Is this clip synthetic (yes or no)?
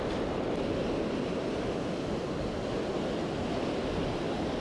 no